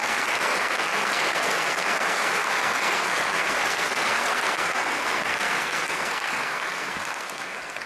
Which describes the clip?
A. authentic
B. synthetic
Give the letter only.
B